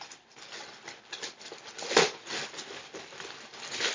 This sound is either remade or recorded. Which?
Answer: recorded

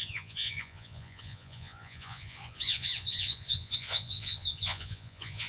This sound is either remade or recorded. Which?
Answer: remade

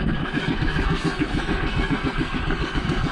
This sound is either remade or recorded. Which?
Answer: remade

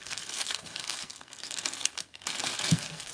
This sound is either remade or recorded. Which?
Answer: remade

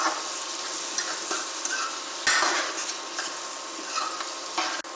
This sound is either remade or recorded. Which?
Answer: recorded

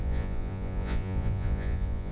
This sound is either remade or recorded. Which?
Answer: remade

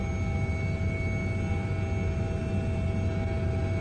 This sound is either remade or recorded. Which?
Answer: recorded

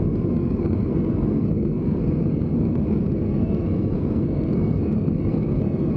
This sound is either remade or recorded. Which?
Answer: remade